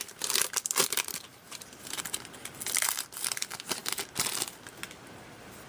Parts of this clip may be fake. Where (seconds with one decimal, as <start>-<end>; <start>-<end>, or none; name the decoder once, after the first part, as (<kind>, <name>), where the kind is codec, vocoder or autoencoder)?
1.3-2.0 (vocoder, BigVGAN v2)